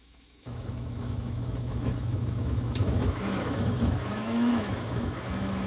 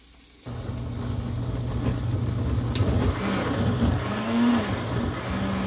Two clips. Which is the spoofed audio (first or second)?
first